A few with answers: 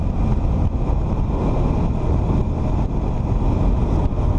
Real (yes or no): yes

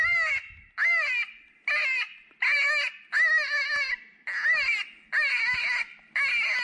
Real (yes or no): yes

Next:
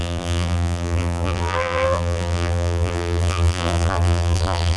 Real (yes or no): no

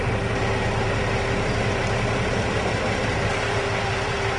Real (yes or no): yes